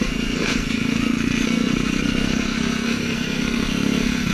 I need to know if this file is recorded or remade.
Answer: remade